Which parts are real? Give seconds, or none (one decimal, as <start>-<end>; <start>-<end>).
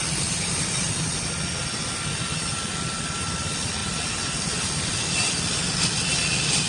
0.0-6.7